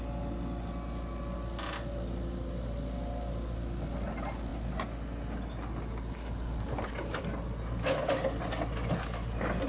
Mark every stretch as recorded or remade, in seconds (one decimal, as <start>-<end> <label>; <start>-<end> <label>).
0.0-9.7 recorded